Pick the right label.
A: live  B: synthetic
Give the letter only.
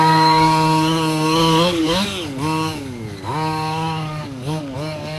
B